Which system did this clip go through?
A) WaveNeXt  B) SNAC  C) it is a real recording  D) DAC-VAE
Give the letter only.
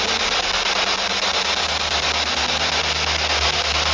C